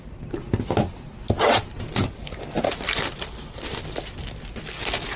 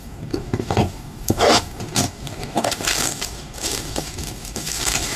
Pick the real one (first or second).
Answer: first